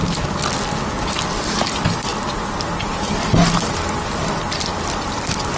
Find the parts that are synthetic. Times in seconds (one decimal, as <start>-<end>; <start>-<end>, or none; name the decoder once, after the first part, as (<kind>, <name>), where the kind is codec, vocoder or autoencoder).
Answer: none